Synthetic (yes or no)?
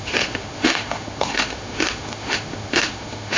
yes